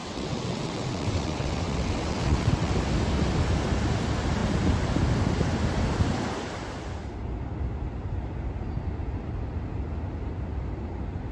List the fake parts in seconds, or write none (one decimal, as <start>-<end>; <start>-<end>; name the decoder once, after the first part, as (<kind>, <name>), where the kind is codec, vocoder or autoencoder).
0.0-2.7 (vocoder, WaveNeXt)